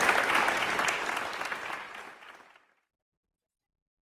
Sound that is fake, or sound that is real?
real